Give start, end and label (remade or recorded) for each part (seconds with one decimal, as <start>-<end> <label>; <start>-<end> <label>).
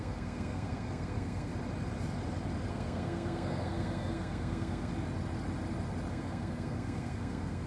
0.0-1.5 remade; 1.5-2.7 recorded; 2.7-4.9 remade; 4.9-6.1 recorded; 6.1-7.7 remade